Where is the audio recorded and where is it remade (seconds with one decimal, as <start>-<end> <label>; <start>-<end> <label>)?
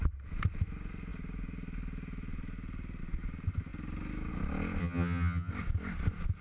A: 0.0-4.8 recorded; 4.8-5.5 remade; 5.5-6.4 recorded